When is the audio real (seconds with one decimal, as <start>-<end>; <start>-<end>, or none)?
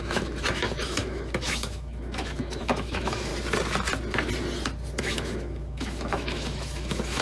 3.3-5.0